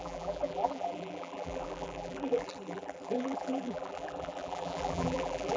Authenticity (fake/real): fake